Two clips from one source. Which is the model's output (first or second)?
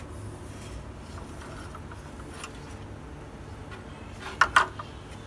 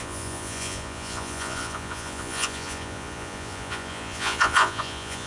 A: second